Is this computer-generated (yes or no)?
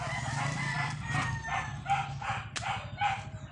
no